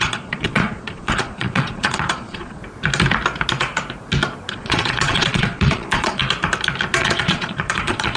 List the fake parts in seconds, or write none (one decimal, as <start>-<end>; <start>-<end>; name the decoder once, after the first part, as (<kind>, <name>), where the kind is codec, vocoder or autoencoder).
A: 0.0-2.6 (vocoder, Vocos); 4.5-6.2; 7.0-8.2